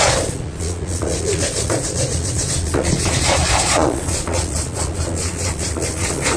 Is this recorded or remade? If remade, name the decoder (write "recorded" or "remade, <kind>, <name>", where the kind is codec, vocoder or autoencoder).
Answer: remade, vocoder, Vocos